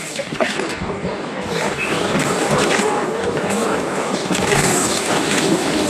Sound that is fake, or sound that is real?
fake